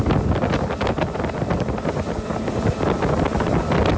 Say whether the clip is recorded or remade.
recorded